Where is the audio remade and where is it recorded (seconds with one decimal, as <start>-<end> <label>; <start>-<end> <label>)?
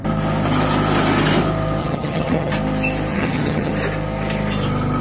0.0-1.8 recorded; 1.8-2.5 remade; 2.5-3.1 recorded; 3.1-3.7 remade; 3.7-5.0 recorded